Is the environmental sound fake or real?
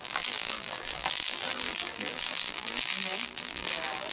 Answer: fake